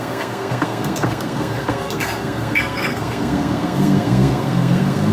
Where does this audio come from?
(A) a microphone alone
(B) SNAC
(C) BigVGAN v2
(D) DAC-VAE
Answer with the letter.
B